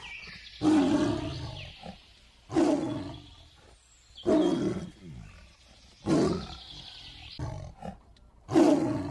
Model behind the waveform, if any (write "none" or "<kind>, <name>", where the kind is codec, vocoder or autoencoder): none